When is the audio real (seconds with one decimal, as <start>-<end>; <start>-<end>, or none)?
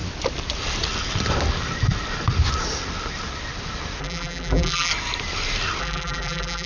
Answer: 0.0-4.0; 4.9-5.8